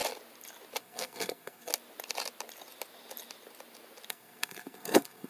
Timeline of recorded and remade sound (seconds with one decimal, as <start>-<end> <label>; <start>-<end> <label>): 0.0-0.8 recorded; 0.8-1.7 remade; 1.7-4.1 recorded; 4.1-5.3 remade

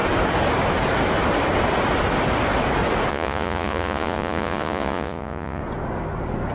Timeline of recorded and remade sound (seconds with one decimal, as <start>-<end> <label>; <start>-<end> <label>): 0.0-3.1 recorded; 3.1-5.6 remade; 5.6-6.5 recorded